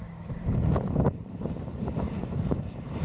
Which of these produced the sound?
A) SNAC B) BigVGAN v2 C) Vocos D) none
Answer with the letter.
B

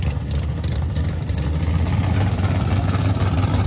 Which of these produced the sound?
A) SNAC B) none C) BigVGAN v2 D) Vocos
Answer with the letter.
B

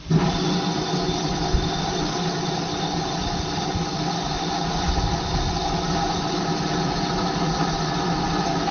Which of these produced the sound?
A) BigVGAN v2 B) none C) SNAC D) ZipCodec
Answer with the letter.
B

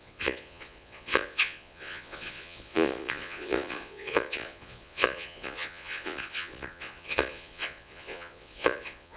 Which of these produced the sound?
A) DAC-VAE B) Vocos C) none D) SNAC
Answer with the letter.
B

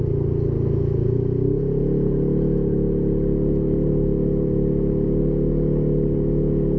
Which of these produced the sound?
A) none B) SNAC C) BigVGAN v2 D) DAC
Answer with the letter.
A